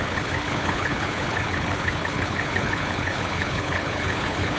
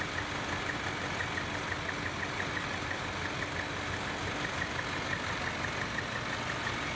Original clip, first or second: second